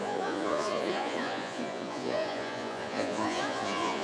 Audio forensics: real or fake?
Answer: fake